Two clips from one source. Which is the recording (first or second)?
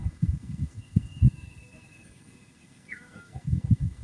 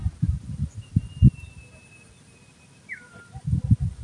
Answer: second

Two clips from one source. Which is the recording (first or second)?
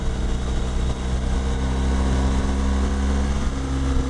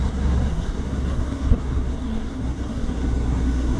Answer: first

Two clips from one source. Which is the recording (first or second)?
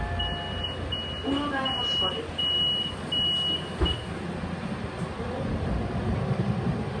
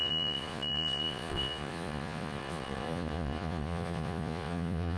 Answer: first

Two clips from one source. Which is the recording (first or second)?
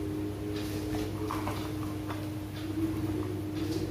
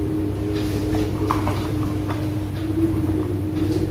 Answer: first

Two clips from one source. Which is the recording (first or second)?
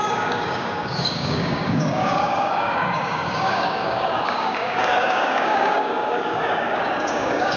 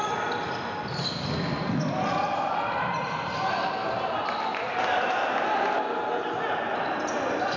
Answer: second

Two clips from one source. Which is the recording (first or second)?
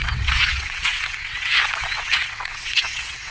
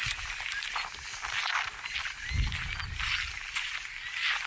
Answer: second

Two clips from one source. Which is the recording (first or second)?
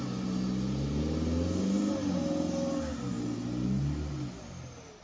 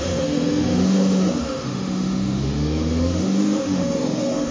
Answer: first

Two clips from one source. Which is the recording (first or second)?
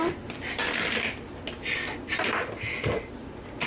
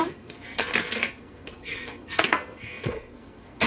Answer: first